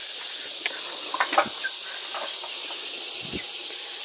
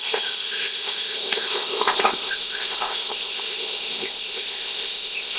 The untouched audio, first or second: first